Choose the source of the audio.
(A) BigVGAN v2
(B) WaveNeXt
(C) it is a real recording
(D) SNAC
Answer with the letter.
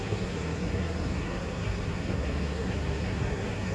D